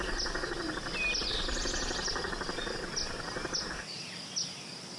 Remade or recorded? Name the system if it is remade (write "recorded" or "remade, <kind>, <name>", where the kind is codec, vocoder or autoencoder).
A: recorded